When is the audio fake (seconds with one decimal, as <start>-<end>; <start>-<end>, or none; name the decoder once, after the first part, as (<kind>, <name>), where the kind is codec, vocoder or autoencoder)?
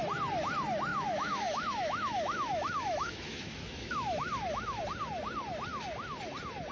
0.9-4.8 (autoencoder, DAC-VAE)